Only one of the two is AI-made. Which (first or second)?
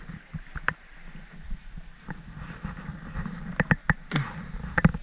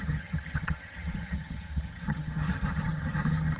second